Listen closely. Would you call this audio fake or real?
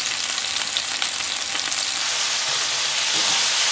real